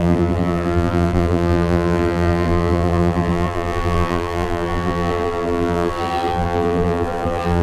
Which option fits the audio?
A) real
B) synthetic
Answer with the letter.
B